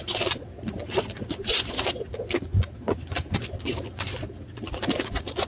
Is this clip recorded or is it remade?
remade